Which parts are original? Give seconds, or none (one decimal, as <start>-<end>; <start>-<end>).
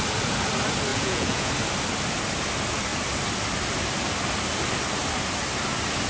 0.0-0.9; 1.5-6.1